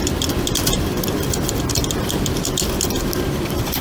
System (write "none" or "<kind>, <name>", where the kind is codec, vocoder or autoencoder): none